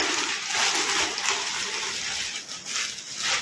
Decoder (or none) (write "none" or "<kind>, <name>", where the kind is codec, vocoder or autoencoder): none